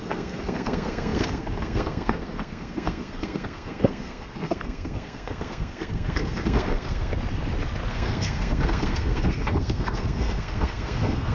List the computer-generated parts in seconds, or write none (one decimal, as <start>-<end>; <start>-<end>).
0.0-7.1; 7.9-11.3